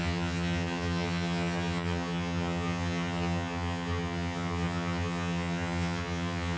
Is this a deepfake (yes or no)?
yes